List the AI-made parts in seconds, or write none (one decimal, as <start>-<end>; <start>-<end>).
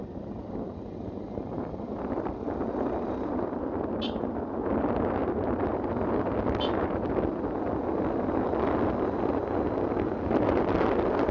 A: none